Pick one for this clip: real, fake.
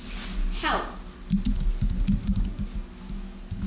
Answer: real